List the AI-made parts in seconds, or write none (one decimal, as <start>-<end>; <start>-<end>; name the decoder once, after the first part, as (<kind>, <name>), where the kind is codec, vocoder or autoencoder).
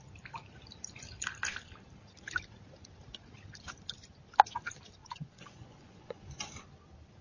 5.0-6.5 (vocoder, Vocos)